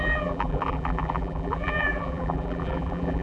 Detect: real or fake fake